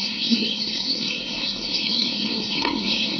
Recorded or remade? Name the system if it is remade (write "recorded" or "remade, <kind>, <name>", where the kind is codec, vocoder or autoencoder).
remade, codec, SNAC